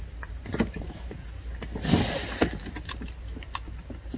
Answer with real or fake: real